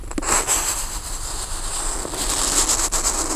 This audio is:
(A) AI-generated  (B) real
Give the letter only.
B